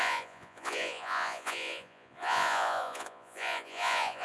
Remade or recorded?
remade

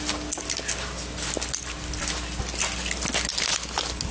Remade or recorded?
recorded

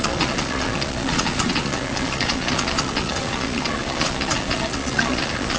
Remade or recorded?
remade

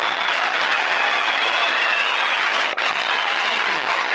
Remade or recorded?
remade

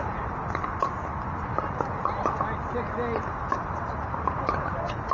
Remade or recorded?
recorded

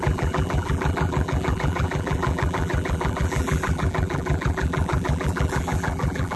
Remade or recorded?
remade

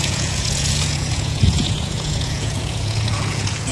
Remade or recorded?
remade